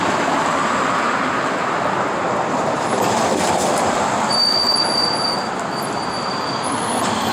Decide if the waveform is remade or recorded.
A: recorded